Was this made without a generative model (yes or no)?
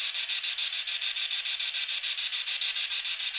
yes